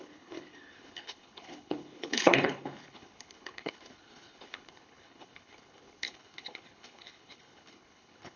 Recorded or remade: remade